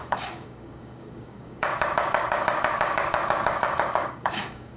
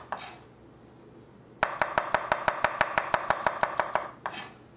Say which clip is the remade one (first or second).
first